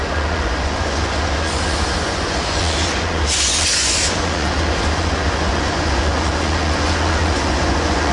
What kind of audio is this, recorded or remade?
remade